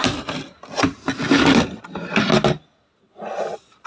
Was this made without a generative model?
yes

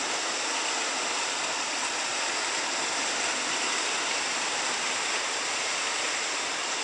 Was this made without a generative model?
yes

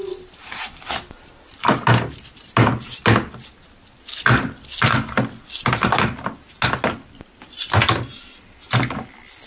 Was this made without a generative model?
yes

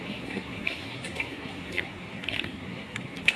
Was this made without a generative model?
no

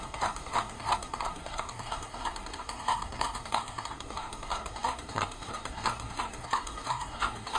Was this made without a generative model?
no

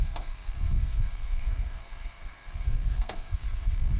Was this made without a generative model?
no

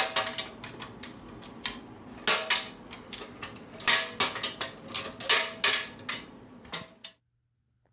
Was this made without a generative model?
yes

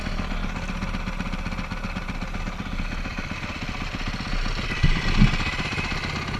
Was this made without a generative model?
yes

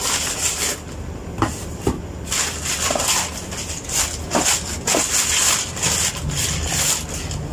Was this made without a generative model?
yes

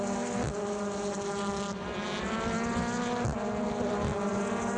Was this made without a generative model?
yes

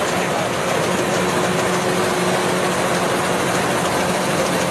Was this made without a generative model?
yes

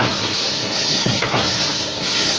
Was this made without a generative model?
no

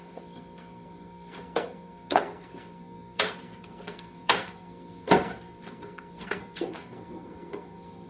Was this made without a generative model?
no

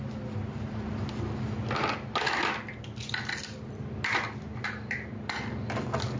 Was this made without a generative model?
yes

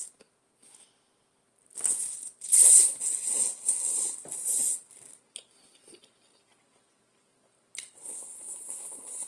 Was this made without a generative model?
yes